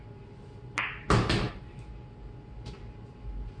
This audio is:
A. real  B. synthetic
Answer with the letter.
A